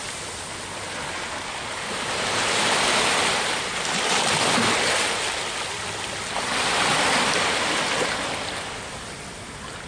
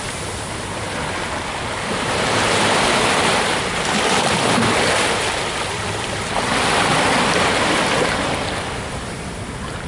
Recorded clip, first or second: first